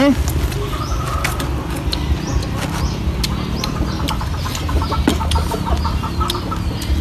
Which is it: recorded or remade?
recorded